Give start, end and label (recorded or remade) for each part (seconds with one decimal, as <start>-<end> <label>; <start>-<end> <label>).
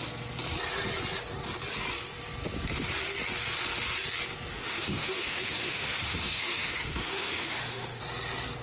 0.0-4.5 recorded; 4.5-8.0 remade; 8.0-8.6 recorded